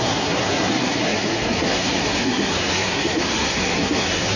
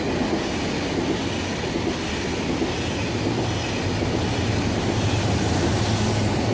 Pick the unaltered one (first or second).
second